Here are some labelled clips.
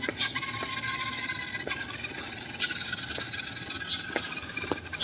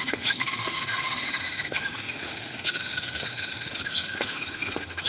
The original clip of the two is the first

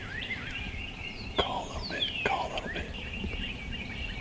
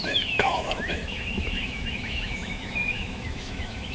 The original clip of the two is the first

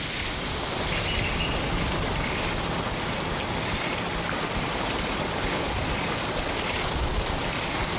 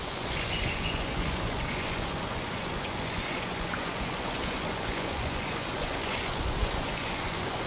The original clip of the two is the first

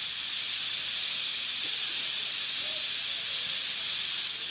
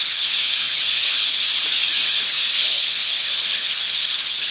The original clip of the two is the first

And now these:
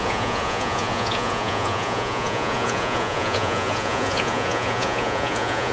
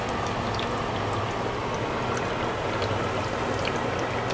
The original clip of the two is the second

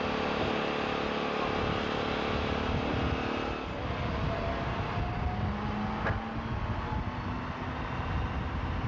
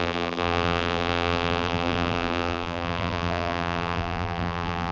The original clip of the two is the first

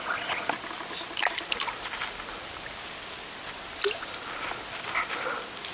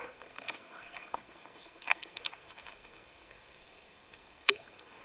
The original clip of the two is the first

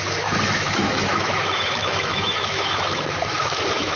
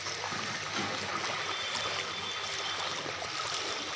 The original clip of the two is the second